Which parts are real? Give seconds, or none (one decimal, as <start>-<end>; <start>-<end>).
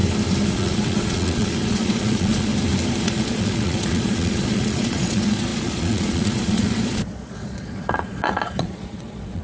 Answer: 0.0-0.5; 2.5-3.0